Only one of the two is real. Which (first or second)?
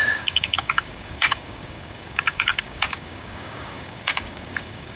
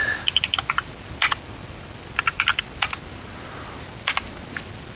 second